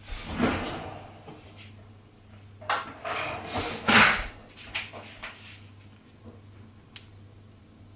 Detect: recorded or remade recorded